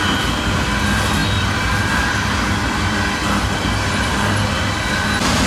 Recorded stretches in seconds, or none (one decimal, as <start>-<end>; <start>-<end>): 0.0-5.5

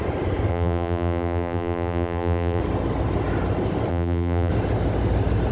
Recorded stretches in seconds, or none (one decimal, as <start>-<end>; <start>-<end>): 0.0-0.5; 2.6-3.9; 4.5-5.5